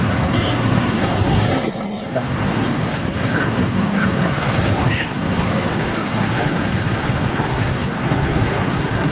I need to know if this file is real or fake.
fake